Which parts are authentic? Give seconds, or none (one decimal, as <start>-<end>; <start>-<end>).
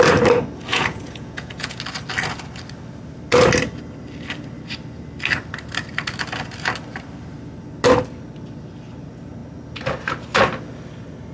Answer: 0.0-0.7; 1.8-11.3